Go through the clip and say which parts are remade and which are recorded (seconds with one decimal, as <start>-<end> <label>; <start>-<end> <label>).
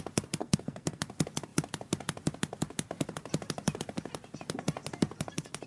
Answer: 0.0-0.4 recorded; 0.4-1.0 remade; 1.0-5.7 recorded